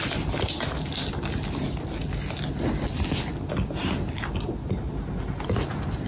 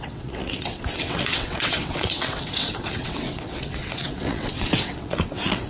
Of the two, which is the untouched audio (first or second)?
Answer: first